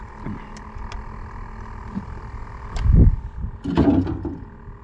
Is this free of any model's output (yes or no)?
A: yes